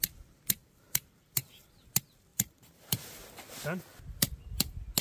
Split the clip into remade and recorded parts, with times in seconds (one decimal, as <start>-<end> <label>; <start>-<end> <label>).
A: 0.0-0.6 recorded; 0.6-1.2 remade; 1.2-2.3 recorded; 2.3-3.3 remade; 3.3-5.0 recorded